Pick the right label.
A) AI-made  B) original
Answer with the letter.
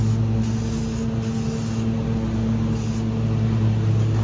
B